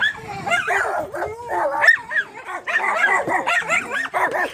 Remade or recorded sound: remade